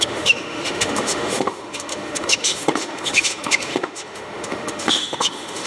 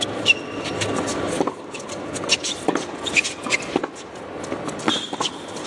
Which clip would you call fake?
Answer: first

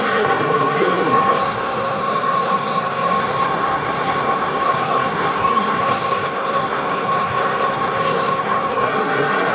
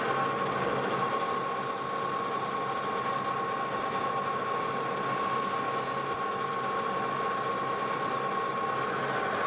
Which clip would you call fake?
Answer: first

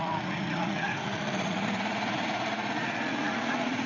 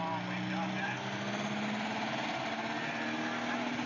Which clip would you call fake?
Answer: first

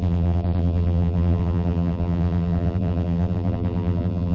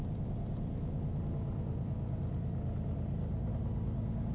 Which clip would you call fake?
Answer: first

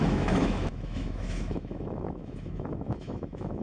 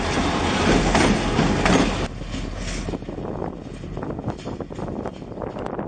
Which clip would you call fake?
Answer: first